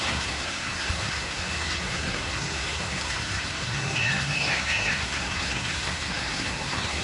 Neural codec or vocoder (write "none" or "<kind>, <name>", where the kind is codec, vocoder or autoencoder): codec, SNAC